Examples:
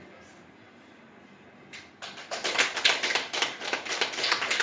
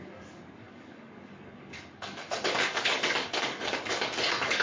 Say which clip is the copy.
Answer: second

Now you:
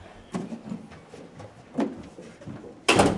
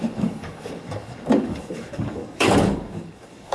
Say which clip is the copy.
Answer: second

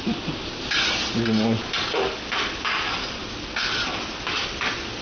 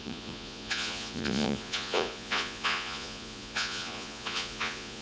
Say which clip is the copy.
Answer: second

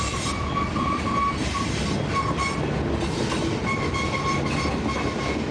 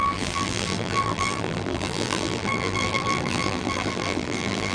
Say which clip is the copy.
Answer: second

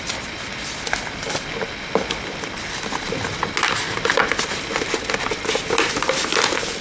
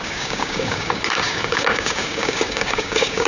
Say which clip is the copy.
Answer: second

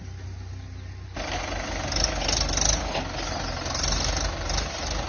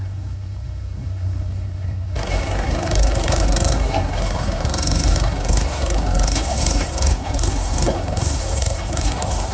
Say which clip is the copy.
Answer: second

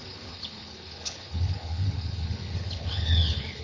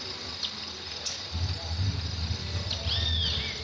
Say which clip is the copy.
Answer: first